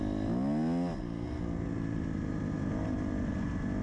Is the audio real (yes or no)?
yes